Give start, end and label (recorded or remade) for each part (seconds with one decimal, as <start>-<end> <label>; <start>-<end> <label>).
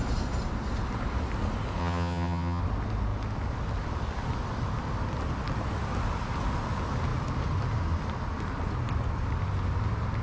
0.0-1.8 recorded; 1.8-2.6 remade; 2.6-10.2 recorded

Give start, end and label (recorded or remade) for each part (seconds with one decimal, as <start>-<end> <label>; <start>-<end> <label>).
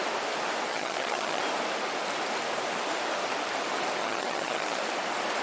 0.0-0.7 recorded; 0.7-1.4 remade; 1.4-4.0 recorded; 4.0-4.8 remade; 4.8-5.4 recorded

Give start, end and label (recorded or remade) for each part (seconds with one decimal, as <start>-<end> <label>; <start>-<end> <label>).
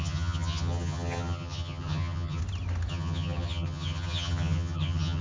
0.0-2.4 remade; 2.4-2.9 recorded; 2.9-5.2 remade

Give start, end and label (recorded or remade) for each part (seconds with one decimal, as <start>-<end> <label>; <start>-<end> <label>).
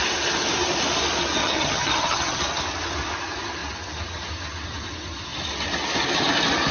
0.0-1.4 recorded; 1.4-2.4 remade; 2.4-6.7 recorded